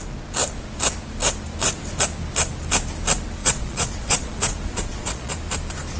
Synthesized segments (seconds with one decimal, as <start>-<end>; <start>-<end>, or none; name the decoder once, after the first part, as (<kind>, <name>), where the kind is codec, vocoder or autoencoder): 3.4-5.3 (vocoder, Vocos)